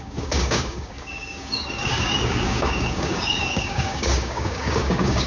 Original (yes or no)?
no